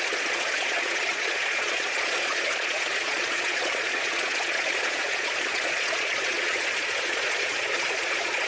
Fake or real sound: fake